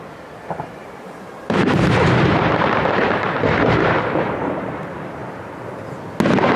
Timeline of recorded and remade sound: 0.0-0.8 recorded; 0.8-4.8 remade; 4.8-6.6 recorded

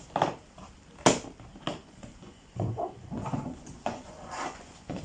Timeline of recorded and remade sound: 0.0-1.8 recorded; 1.8-5.0 remade